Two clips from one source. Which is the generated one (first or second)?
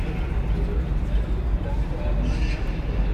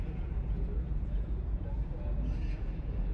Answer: second